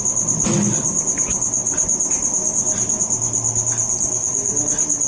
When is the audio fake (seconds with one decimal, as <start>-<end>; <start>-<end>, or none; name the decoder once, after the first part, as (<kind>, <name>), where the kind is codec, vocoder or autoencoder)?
none